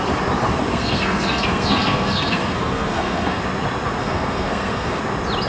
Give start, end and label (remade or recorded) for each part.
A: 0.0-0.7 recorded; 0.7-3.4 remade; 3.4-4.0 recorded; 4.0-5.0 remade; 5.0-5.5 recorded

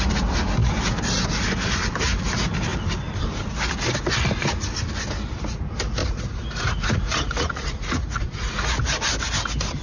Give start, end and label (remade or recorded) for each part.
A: 0.0-6.0 recorded; 6.0-8.7 remade; 8.7-9.8 recorded

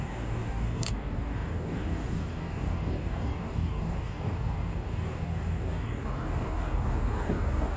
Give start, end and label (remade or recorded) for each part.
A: 0.0-7.8 remade

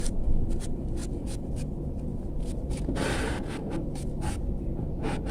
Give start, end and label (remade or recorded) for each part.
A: 0.0-1.0 remade; 1.0-4.2 recorded; 4.2-5.3 remade

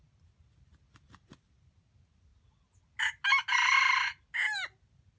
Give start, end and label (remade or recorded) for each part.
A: 0.0-5.2 recorded

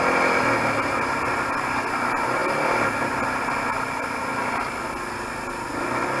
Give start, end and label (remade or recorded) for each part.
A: 0.0-6.2 recorded